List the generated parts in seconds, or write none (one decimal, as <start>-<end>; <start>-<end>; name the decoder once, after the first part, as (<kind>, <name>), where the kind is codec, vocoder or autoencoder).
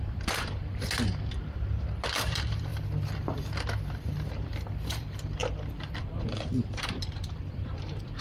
0.0-0.6 (vocoder, BigVGAN v2); 2.2-2.7; 3.9-5.4; 6.0-8.2